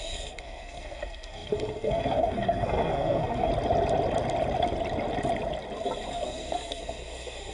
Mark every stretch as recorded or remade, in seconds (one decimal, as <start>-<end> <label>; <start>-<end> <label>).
0.0-3.5 remade; 3.5-6.1 recorded; 6.1-7.5 remade